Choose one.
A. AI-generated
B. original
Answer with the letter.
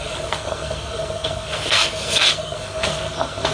A